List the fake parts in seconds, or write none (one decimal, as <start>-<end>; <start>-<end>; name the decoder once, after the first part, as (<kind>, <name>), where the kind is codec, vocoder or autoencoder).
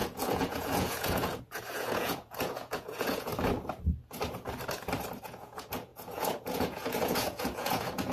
0.0-3.3 (vocoder, Vocos); 5.2-8.1